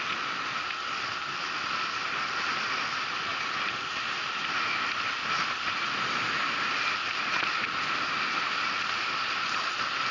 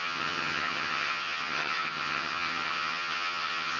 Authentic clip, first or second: first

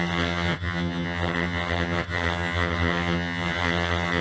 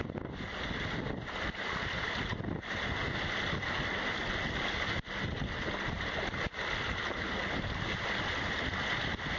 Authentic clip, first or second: second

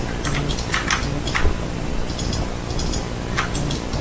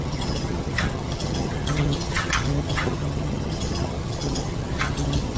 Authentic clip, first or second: first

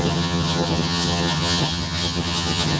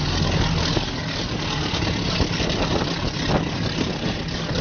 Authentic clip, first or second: second